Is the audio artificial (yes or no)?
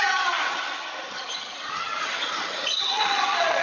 yes